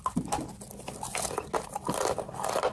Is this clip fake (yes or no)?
no